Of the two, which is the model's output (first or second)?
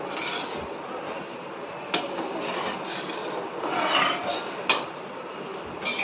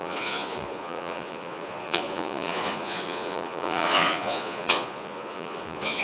second